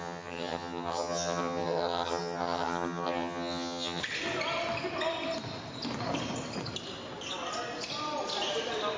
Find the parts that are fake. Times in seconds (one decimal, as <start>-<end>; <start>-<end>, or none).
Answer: 0.0-4.0